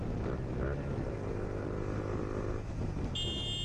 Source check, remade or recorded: recorded